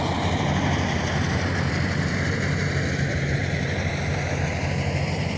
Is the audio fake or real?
real